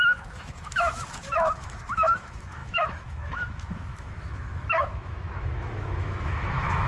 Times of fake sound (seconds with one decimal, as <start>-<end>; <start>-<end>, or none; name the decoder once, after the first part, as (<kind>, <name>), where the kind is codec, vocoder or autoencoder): 0.0-6.9 (autoencoder, DAC-VAE)